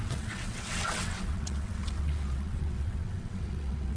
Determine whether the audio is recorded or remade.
remade